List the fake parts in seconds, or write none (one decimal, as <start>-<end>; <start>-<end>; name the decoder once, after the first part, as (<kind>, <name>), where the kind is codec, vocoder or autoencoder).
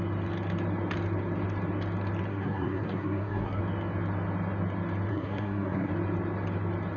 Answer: 2.3-3.6 (codec, SNAC); 5.1-5.9